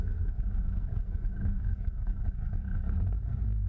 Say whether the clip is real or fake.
fake